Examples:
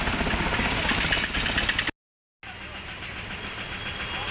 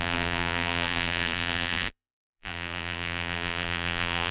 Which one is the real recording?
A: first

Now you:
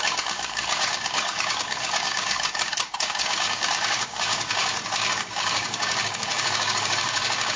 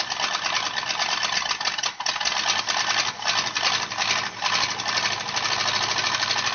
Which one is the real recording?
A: second